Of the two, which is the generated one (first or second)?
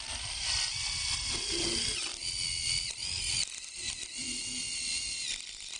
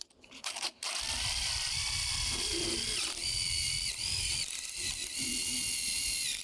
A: second